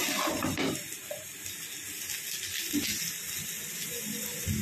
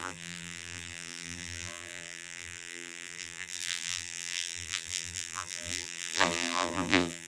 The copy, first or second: second